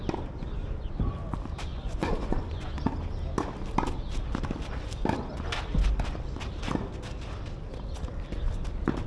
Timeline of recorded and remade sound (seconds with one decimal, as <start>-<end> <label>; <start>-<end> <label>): 0.0-1.7 recorded; 1.7-2.9 remade; 2.9-9.1 recorded

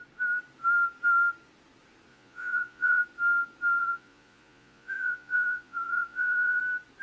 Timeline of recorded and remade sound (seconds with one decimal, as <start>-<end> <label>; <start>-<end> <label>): 0.0-2.1 recorded; 2.1-3.0 remade; 3.0-3.8 recorded; 3.8-6.6 remade; 6.6-7.0 recorded

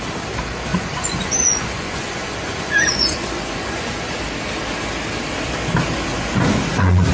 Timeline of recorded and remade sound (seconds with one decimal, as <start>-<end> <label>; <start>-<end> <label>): 0.0-0.7 recorded; 0.7-4.2 remade; 4.2-6.1 recorded; 6.1-7.1 remade

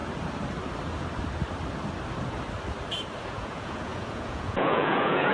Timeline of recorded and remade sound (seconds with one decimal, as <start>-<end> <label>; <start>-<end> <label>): 0.0-3.2 recorded; 3.2-5.3 remade